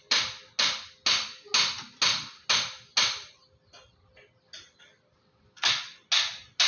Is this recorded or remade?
recorded